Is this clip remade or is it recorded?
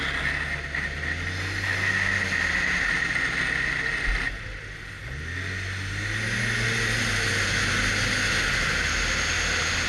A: recorded